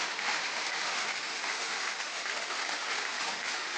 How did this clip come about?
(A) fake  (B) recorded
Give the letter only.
A